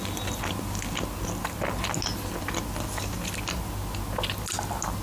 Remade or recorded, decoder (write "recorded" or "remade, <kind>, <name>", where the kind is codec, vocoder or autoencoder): recorded